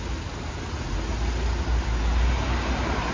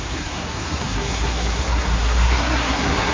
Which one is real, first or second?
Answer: first